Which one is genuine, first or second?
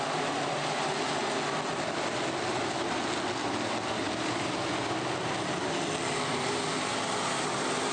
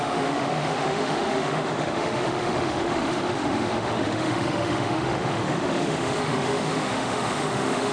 first